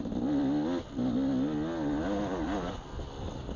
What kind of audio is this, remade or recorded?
recorded